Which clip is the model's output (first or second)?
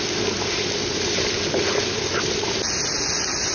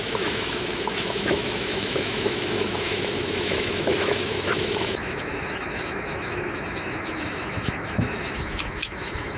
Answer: second